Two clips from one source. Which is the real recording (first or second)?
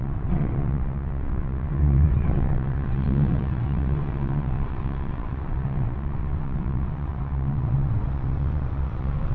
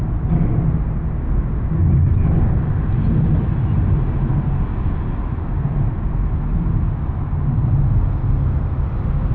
second